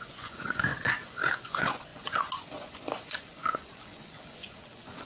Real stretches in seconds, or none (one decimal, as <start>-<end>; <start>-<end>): none